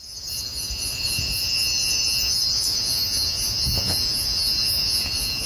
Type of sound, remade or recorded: remade